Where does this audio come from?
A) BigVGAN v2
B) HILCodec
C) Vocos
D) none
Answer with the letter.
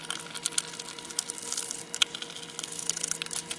D